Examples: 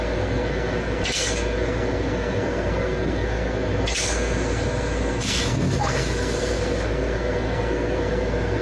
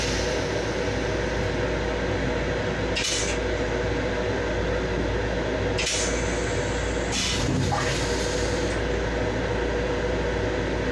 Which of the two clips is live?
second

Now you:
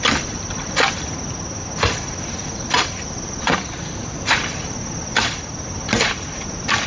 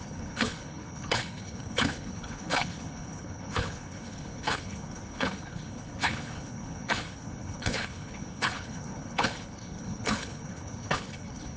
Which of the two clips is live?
first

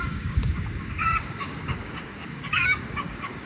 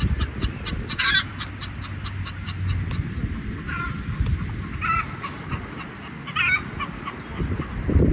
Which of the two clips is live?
second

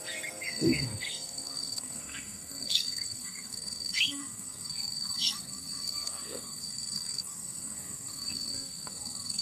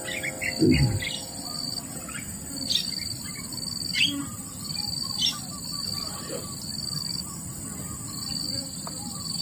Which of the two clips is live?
second